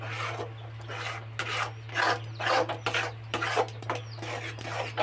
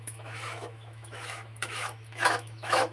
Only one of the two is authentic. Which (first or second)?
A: first